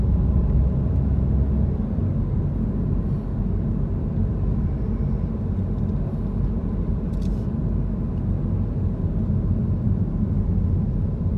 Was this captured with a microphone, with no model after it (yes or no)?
yes